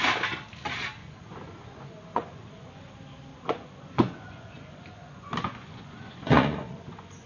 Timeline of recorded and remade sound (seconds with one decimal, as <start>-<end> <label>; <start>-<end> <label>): 0.0-1.0 recorded; 1.0-2.9 remade; 2.9-3.3 recorded; 3.3-7.3 remade